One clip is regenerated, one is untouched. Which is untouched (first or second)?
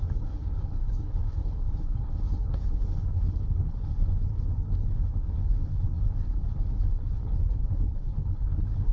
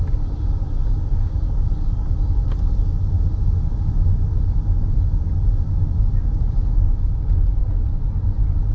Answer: second